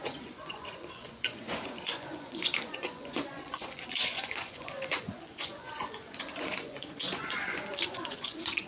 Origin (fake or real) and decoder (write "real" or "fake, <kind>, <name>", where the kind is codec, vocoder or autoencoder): fake, vocoder, Vocos